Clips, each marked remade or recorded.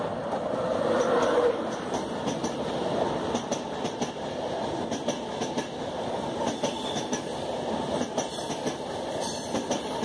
recorded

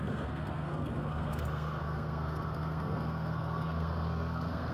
remade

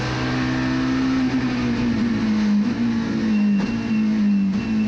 recorded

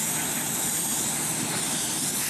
recorded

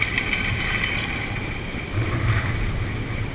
recorded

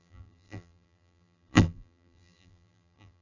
remade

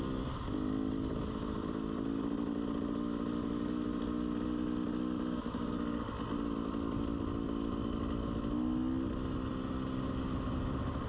recorded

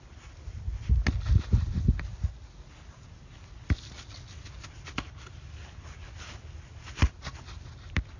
recorded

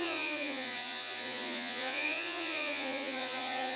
remade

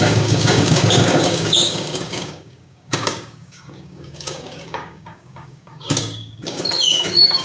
remade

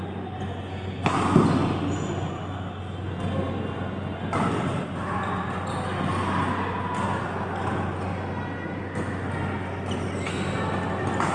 recorded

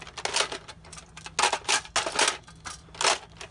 recorded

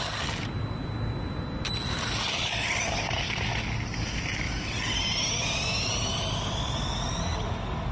recorded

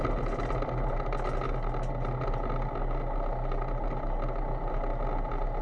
recorded